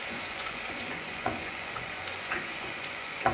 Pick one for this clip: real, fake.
fake